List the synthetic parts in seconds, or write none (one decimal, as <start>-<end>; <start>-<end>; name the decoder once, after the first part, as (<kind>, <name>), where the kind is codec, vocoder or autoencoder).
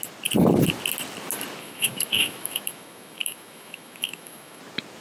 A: 1.6-4.6 (autoencoder, DAC-VAE)